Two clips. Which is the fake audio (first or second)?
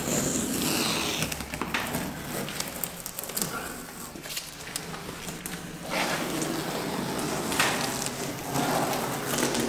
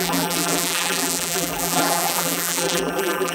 second